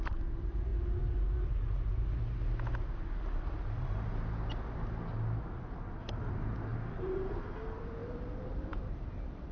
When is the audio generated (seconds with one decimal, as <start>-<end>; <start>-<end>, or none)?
6.7-7.5; 8.0-9.5